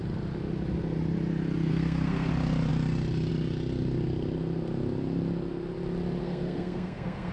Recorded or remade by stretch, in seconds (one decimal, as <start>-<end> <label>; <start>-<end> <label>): 0.0-1.7 recorded; 1.7-2.3 remade; 2.3-6.2 recorded; 6.2-7.3 remade